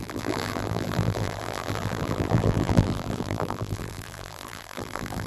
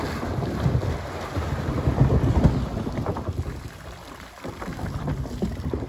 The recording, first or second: second